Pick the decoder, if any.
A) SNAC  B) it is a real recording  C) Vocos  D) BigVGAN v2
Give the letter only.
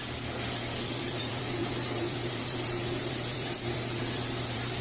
D